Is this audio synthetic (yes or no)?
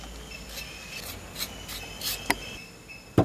no